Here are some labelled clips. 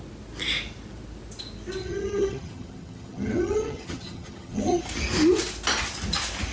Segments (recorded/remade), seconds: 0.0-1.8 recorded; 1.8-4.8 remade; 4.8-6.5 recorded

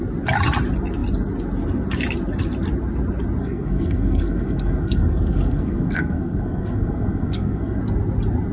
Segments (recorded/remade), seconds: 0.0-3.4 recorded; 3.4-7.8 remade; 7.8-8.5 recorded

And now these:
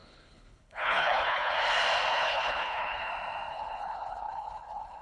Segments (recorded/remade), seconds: 0.0-1.5 remade; 1.5-2.1 recorded; 2.1-3.1 remade; 3.1-3.5 recorded; 3.5-5.0 remade